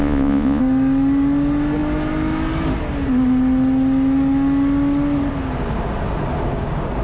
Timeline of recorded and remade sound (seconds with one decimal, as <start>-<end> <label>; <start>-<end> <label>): 0.0-0.6 remade; 0.6-7.0 recorded